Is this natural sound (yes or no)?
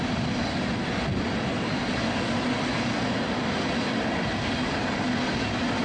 yes